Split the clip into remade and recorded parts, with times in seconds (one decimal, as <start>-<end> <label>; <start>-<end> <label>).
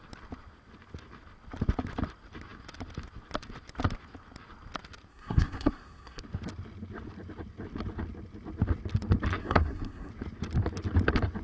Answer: 0.0-5.1 recorded; 5.1-6.2 remade; 6.2-9.4 recorded; 9.4-10.1 remade; 10.1-11.4 recorded